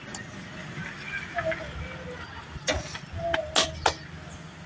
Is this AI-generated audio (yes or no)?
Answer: no